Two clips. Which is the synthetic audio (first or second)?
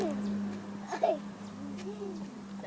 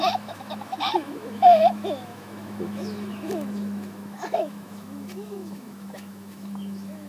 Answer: second